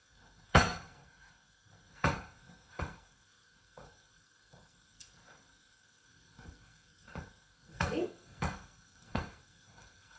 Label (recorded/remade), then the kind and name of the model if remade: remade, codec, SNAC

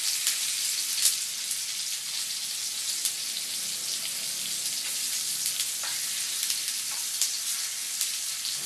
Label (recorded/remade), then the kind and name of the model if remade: recorded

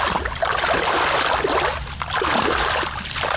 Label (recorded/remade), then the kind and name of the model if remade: recorded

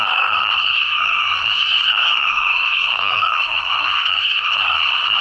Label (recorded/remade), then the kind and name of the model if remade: remade, codec, SNAC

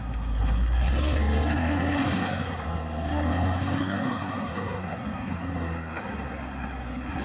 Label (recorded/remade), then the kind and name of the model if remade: remade, codec, SNAC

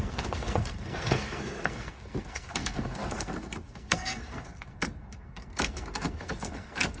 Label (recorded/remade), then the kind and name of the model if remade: remade, codec, SNAC